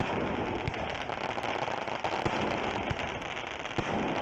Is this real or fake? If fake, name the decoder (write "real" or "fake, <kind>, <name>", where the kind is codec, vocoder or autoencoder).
real